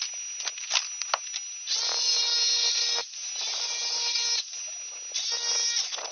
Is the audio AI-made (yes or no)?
no